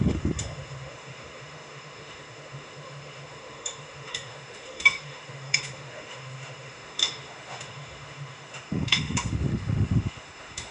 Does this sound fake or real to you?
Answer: fake